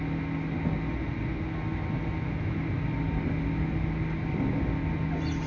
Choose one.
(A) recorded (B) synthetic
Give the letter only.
A